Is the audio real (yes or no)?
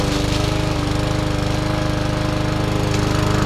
yes